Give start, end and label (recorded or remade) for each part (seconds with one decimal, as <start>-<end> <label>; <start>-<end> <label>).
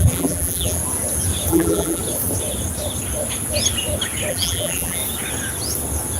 0.0-0.8 remade; 0.8-1.5 recorded; 1.5-2.0 remade; 2.0-4.3 recorded; 4.3-5.0 remade; 5.0-6.2 recorded